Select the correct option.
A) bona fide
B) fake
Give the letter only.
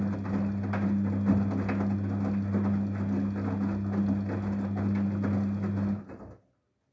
A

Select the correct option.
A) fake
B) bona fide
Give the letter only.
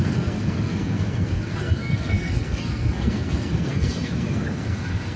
A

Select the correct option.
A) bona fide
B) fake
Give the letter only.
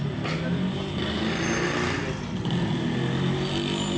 A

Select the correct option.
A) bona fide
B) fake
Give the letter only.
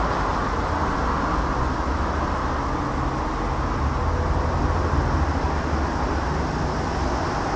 A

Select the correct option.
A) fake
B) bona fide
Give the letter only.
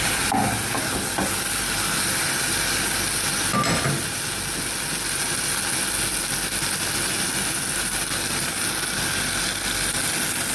B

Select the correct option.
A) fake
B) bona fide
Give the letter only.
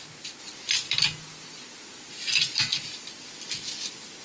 B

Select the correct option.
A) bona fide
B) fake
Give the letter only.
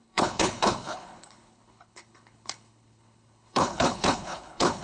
B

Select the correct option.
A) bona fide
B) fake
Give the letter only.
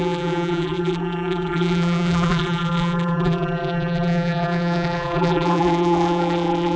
B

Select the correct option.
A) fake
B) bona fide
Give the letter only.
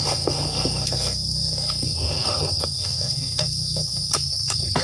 A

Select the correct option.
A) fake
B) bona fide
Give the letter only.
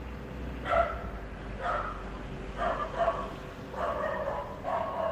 B